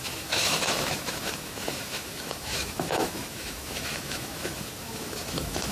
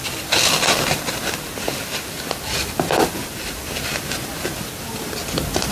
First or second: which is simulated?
first